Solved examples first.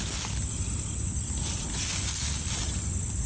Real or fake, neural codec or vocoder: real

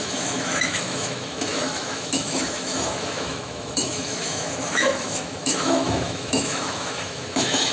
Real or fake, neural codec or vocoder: fake, autoencoder, DAC-VAE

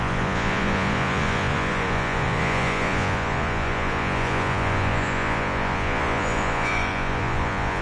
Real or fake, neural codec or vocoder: fake, vocoder, Vocos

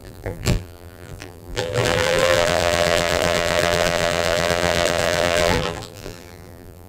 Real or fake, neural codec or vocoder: fake, vocoder, BigVGAN v2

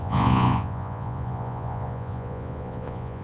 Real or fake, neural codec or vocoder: fake, vocoder, Vocos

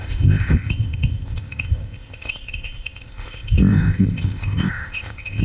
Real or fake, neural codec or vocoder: fake, codec, ZipCodec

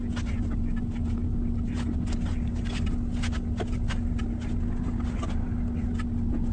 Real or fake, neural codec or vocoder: real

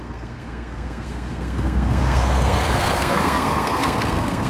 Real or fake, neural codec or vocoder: fake, codec, SNAC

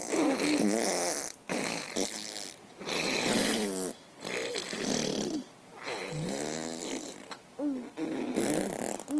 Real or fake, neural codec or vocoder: real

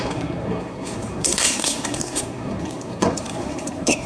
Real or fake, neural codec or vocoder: fake, codec, SNAC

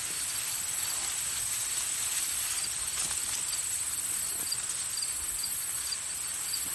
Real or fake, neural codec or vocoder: real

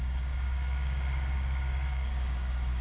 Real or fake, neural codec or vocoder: fake, codec, DAC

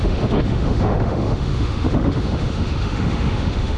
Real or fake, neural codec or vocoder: fake, autoencoder, DAC-VAE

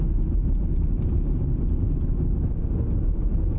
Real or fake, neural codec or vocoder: real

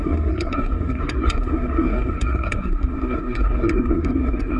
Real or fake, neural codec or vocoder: fake, codec, SNAC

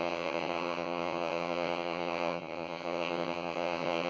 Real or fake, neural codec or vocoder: fake, vocoder, HiFi-GAN